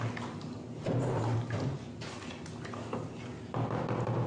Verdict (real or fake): real